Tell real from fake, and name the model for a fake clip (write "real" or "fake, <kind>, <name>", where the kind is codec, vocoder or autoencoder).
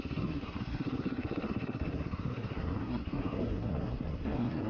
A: fake, codec, SNAC